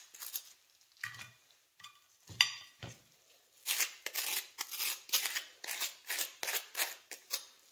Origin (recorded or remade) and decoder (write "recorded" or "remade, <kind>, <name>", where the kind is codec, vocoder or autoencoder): recorded